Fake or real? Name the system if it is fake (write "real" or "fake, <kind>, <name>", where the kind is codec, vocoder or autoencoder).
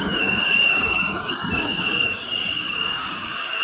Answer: fake, codec, DAC